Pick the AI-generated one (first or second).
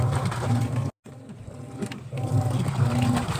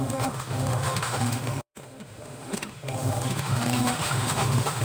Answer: second